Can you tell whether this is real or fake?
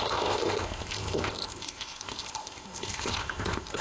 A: fake